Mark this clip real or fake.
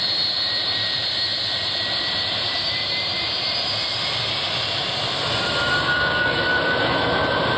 fake